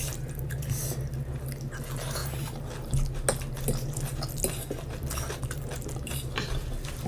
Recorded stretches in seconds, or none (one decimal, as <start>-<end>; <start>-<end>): 0.5-4.1; 5.4-7.1